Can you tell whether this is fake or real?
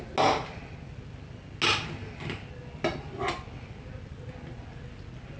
real